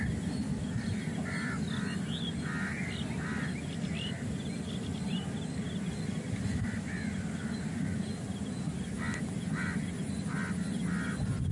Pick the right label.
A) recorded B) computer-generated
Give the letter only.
A